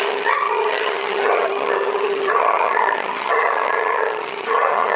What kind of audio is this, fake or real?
fake